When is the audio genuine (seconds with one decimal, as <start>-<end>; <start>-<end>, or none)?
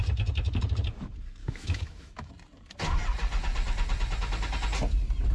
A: 0.0-1.4; 2.3-5.3